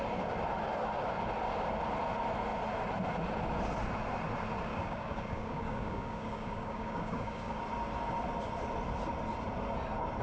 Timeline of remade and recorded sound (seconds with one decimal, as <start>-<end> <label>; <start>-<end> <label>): 0.0-4.7 recorded; 4.7-7.6 remade; 7.6-10.2 recorded